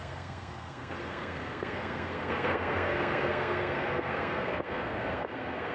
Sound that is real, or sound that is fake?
fake